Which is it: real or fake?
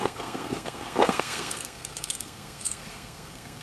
fake